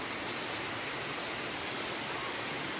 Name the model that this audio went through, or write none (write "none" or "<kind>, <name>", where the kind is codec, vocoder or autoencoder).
none